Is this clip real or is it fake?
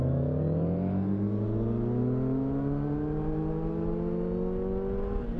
real